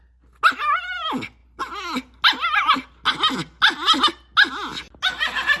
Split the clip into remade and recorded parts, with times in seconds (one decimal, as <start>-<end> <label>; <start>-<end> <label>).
0.0-5.6 recorded